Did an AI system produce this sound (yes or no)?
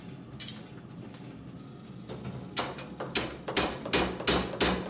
no